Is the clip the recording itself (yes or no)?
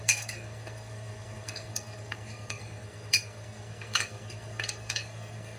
no